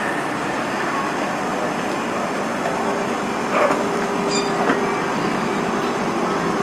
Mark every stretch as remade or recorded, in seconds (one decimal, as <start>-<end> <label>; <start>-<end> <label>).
0.0-6.6 recorded